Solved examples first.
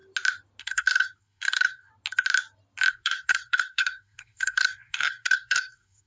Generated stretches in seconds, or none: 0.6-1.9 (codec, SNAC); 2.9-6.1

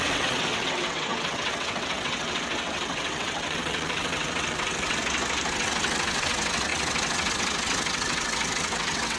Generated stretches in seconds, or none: 0.0-5.0 (vocoder, WaveNeXt); 5.5-9.2

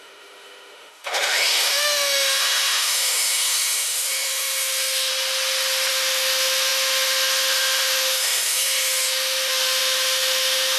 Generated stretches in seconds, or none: 0.0-5.1 (autoencoder, DAC-VAE); 5.9-10.8